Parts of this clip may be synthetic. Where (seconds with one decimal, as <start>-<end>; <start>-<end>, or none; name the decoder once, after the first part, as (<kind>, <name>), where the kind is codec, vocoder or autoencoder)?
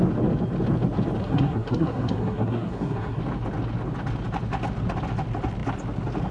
1.2-3.2 (codec, SNAC)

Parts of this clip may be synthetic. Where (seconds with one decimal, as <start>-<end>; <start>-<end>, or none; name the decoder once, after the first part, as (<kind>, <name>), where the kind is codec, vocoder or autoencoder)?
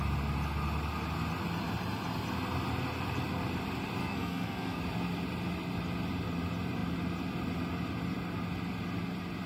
4.0-4.8 (codec, SNAC)